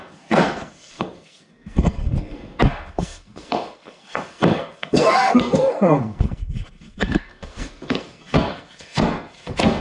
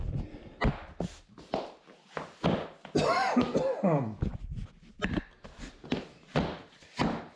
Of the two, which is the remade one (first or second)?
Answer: first